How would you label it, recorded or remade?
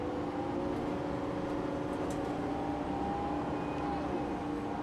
recorded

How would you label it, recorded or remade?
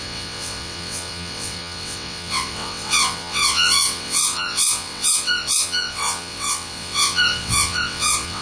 remade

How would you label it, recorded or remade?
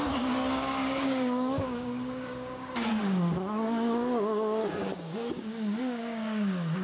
remade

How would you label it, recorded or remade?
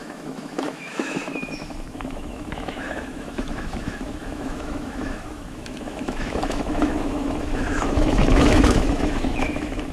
remade